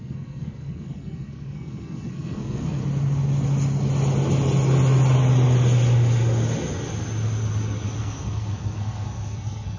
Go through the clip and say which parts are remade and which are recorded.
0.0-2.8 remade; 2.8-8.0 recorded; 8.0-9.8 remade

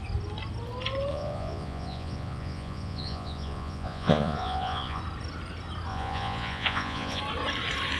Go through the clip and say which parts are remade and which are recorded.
0.0-1.1 recorded; 1.1-5.0 remade; 5.0-5.9 recorded; 5.9-7.2 remade; 7.2-8.0 recorded